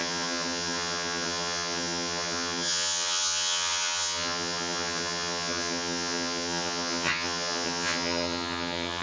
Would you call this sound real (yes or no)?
no